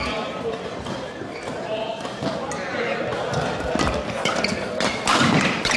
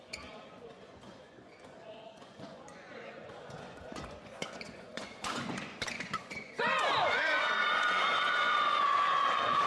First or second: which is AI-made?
second